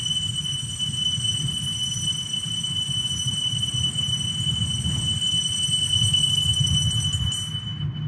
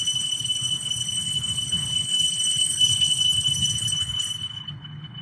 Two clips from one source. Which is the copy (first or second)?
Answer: second